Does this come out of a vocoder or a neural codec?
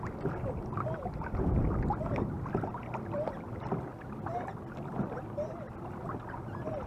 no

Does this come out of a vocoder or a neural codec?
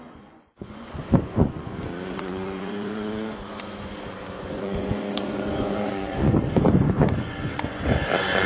yes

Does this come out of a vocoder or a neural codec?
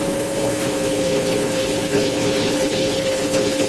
yes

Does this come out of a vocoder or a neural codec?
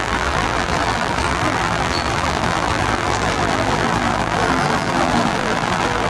yes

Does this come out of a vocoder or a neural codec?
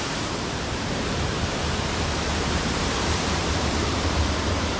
yes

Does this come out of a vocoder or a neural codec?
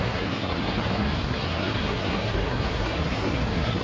yes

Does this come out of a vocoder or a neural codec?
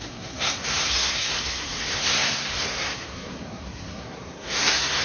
yes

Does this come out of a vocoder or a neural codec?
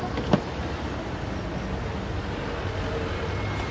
no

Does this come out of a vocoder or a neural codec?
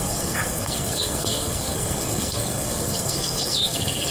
yes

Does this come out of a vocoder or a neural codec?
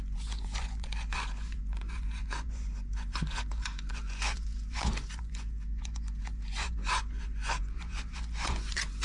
yes